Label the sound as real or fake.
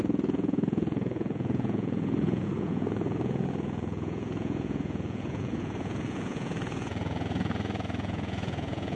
fake